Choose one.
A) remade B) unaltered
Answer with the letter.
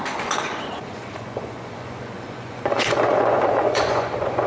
A